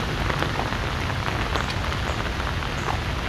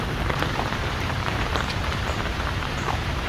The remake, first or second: second